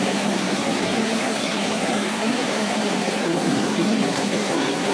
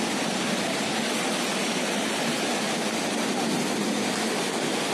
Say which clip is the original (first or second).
second